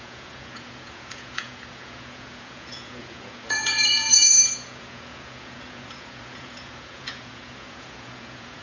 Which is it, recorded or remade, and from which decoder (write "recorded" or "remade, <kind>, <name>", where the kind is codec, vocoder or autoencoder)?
remade, vocoder, Vocos